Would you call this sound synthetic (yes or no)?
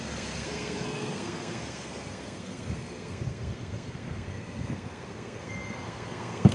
yes